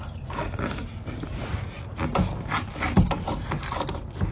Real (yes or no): yes